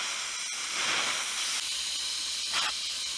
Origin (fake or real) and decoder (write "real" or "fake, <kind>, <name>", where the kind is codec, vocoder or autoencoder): real